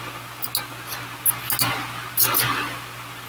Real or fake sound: real